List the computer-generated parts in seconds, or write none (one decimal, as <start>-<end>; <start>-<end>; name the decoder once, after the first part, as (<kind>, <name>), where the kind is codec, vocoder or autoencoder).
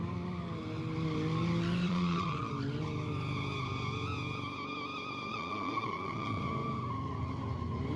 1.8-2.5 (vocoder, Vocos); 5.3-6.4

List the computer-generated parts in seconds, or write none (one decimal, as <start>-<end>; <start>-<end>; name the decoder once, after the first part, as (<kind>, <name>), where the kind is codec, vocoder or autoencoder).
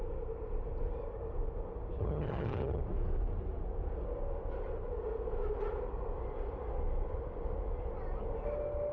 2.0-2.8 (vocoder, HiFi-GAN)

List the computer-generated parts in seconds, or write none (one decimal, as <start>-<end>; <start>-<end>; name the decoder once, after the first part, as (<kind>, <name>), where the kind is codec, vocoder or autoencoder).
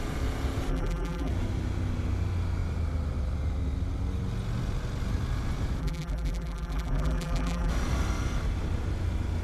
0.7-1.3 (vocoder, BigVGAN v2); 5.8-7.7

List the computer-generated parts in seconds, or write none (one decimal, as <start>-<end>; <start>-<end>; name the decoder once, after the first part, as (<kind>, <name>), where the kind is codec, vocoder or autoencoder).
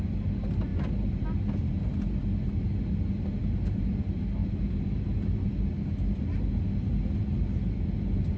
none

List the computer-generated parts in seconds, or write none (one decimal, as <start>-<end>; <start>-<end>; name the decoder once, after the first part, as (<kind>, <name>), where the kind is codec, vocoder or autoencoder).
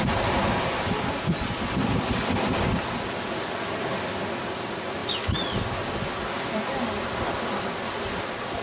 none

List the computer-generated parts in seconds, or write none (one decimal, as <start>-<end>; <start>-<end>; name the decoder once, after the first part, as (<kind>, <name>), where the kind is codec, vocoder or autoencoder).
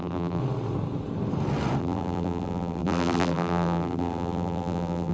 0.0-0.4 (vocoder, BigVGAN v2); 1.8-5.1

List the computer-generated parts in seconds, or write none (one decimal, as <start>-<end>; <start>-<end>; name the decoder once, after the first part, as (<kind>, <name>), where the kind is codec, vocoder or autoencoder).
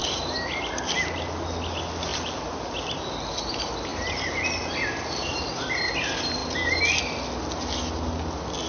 0.0-0.8 (vocoder, BigVGAN v2); 2.1-2.7